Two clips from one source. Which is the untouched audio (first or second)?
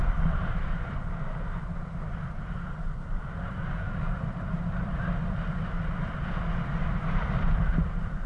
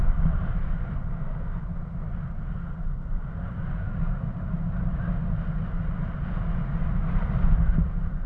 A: second